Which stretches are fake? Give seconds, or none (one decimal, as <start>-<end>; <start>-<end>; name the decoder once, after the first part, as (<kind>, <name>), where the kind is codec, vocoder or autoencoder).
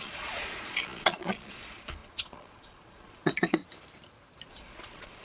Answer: 0.0-3.6 (vocoder, Vocos); 4.5-5.2